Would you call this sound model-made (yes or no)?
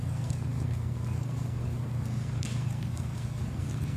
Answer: yes